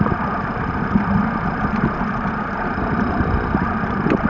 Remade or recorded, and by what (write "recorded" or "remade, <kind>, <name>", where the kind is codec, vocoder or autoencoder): recorded